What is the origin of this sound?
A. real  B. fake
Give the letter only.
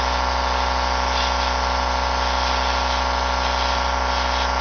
A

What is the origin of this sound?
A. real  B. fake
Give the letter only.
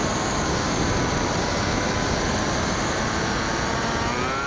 A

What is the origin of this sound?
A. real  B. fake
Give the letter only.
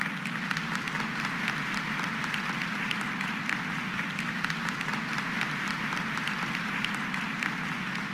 A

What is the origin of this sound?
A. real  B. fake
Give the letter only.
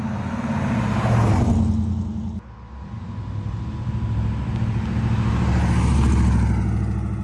A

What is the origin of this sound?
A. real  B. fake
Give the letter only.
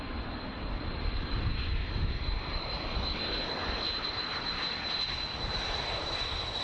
B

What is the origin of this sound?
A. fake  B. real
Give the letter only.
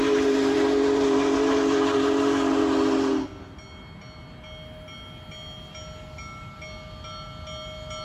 B